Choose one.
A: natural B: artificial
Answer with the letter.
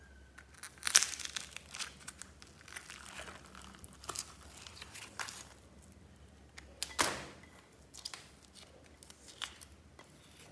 A